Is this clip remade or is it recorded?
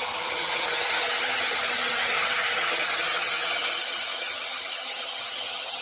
remade